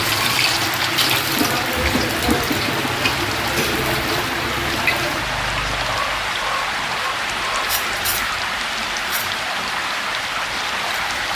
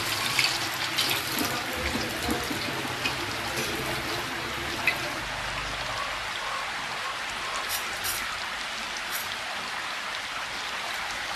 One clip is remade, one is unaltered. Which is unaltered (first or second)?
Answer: second